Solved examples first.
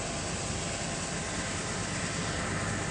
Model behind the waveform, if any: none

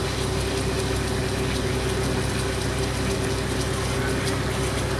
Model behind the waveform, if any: none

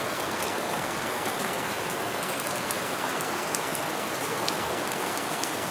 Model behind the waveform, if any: codec, SNAC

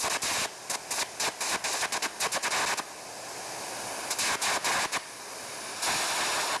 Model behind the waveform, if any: none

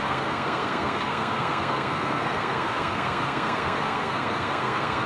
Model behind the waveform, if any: codec, SNAC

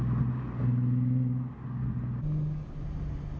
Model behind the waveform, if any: none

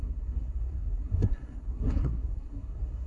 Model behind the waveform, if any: codec, SNAC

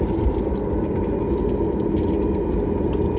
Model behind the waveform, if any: none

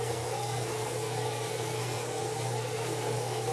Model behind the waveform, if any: codec, SNAC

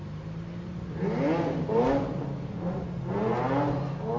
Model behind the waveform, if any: none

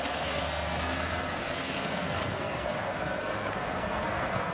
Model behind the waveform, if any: codec, SNAC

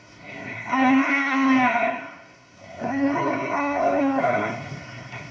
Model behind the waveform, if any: codec, SNAC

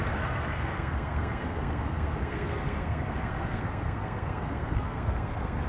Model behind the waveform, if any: codec, SNAC